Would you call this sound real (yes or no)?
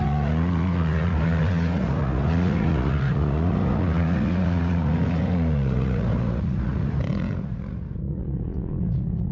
no